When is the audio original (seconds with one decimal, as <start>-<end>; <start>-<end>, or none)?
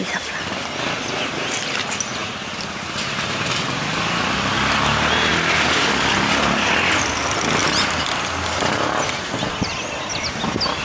0.0-10.8